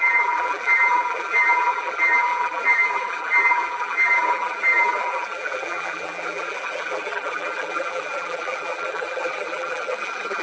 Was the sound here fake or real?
fake